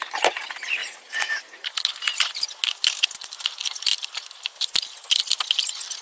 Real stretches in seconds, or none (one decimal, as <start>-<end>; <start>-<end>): 0.0-0.8; 1.4-6.0